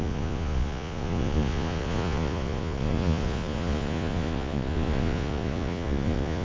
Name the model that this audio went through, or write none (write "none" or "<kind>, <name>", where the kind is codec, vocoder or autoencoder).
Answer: vocoder, Vocos